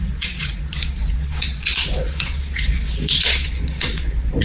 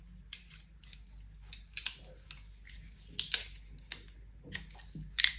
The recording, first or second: second